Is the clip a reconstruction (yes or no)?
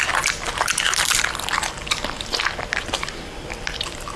no